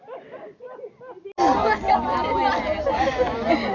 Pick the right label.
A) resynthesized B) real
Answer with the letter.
B